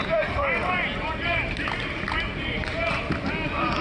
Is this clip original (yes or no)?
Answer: yes